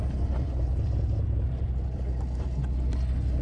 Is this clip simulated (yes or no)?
no